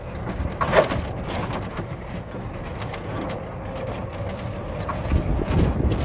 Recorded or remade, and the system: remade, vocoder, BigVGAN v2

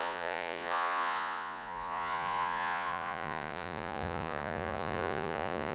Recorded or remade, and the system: remade, vocoder, Vocos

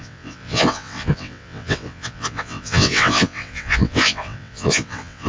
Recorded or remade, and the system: remade, vocoder, WaveNeXt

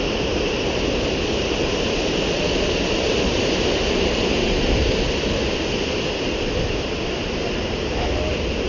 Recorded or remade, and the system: recorded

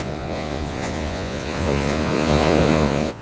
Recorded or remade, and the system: remade, vocoder, Vocos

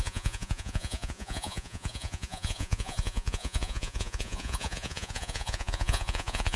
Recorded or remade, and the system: remade, vocoder, Vocos